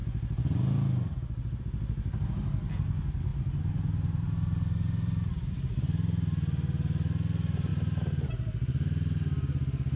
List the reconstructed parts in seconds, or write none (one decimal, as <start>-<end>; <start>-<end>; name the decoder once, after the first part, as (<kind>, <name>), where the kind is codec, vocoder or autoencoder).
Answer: 7.7-8.3 (vocoder, BigVGAN v2)